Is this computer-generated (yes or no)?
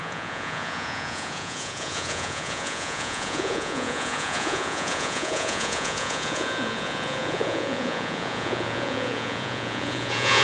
yes